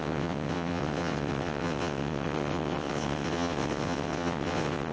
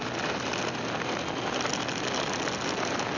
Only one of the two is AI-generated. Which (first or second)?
first